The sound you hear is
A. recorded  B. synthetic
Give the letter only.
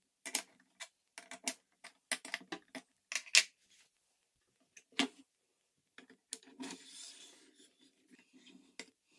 A